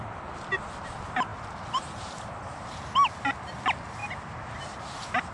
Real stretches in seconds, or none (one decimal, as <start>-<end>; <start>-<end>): 0.0-5.3